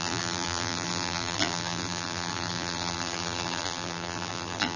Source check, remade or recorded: remade